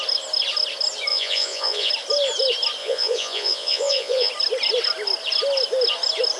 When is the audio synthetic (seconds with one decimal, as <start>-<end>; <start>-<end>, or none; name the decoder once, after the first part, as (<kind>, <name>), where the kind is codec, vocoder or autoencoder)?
1.1-1.9 (vocoder, Vocos); 2.8-4.3